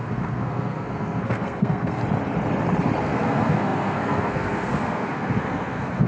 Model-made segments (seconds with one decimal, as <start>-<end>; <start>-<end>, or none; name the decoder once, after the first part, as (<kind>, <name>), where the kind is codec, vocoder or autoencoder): 0.0-2.0 (codec, SNAC); 3.0-6.1